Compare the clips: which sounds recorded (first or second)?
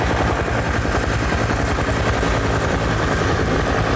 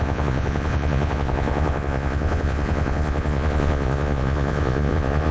first